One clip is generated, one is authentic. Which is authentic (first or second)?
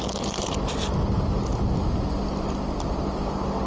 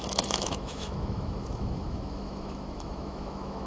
first